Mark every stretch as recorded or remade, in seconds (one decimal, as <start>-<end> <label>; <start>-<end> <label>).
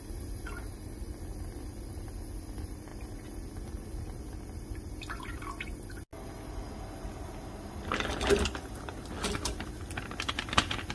0.0-10.9 recorded